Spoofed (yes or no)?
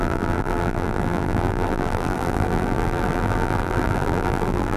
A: yes